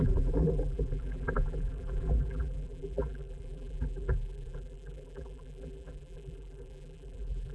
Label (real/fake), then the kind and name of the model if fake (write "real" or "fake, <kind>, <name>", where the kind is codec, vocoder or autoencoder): fake, vocoder, BigVGAN v2